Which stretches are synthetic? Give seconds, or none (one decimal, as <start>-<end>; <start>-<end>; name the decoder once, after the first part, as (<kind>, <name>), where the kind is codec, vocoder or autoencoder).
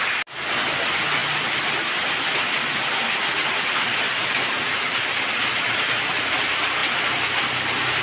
none